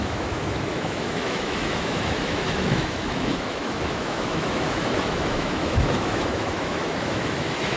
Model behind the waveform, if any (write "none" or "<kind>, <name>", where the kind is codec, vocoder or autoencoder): autoencoder, DAC-VAE